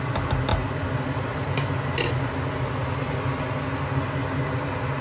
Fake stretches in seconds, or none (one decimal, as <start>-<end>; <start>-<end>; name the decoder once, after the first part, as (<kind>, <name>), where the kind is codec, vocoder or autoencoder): none